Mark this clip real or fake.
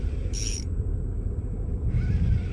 real